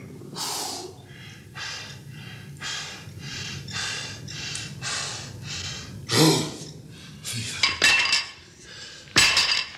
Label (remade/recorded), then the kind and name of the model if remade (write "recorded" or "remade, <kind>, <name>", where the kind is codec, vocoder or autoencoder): remade, vocoder, BigVGAN v2